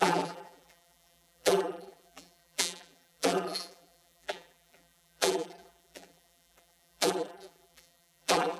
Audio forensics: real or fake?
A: fake